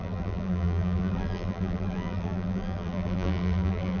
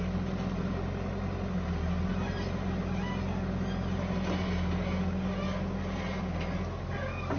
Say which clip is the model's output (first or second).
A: first